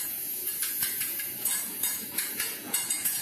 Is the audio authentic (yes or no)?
no